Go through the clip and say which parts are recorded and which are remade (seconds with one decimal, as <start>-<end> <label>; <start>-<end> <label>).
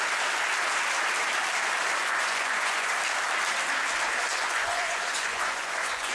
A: 0.0-2.0 recorded; 2.0-2.9 remade; 2.9-4.3 recorded; 4.3-6.1 remade